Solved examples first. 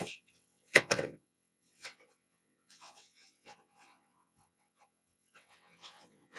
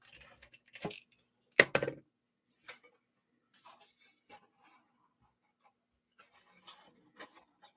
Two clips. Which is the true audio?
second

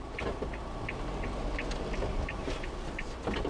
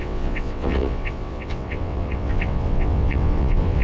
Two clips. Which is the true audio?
first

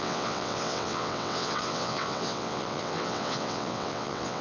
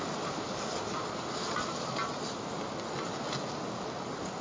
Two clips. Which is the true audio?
second